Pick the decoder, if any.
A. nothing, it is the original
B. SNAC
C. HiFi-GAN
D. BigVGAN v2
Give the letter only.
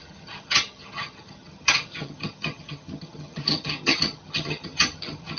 C